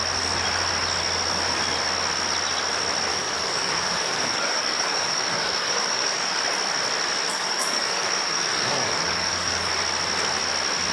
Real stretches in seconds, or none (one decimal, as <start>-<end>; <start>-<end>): 0.0-3.1; 6.4-7.3; 9.7-10.9